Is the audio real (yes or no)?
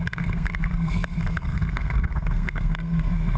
no